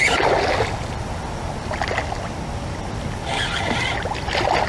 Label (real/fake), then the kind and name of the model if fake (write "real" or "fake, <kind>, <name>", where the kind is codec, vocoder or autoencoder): real